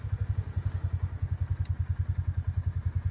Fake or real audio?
real